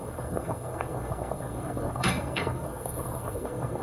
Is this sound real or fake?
fake